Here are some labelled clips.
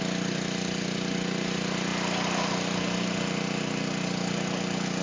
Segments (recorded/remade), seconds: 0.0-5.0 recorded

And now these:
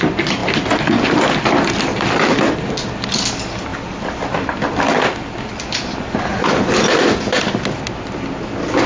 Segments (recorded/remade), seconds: 0.0-0.4 recorded; 0.4-2.0 remade; 2.0-3.7 recorded; 3.7-4.8 remade; 4.8-6.3 recorded; 6.3-7.0 remade; 7.0-8.9 recorded

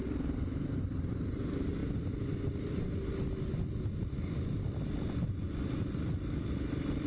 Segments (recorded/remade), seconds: 0.0-7.1 recorded

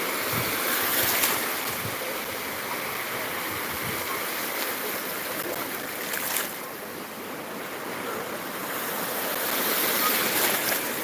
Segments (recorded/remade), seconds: 0.0-8.6 recorded; 8.6-9.2 remade; 9.2-11.0 recorded

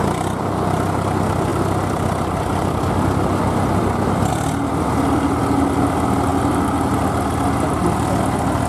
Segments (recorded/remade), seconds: 0.0-8.7 recorded

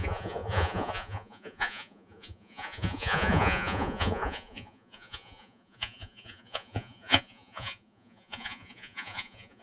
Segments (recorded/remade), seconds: 0.0-9.6 remade

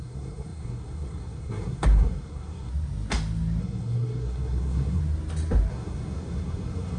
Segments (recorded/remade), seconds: 0.0-2.7 remade; 2.7-3.6 recorded; 3.6-5.0 remade; 5.0-5.7 recorded; 5.7-7.0 remade